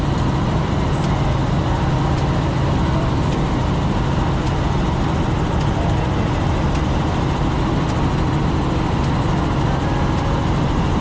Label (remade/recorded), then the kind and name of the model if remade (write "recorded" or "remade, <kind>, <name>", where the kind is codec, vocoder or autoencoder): remade, vocoder, BigVGAN v2